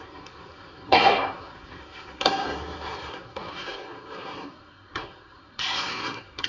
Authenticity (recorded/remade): remade